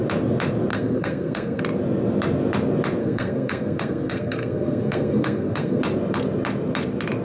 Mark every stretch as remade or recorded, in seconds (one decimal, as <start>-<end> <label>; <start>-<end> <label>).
0.0-0.7 recorded; 0.7-1.6 remade; 1.6-3.0 recorded; 3.0-5.8 remade; 5.8-7.2 recorded